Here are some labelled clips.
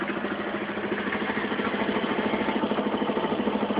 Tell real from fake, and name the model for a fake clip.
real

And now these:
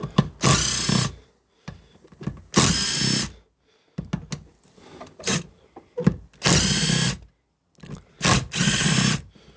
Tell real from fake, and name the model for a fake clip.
real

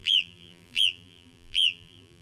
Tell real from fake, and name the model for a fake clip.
fake, vocoder, BigVGAN v2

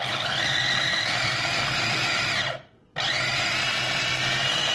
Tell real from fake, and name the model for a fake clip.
real